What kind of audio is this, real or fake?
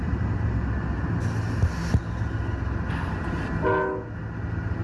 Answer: real